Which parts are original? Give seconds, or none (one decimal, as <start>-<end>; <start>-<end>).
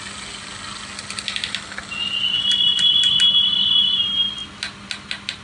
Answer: 0.0-5.4